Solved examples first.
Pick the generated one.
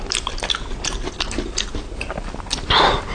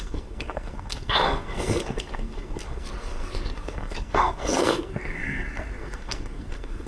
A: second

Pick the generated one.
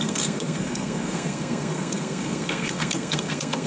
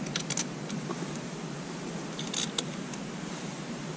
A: first